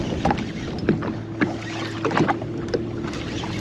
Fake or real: real